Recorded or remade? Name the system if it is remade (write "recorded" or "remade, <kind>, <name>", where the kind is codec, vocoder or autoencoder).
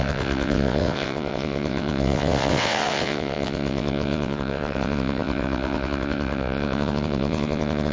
remade, vocoder, WaveNeXt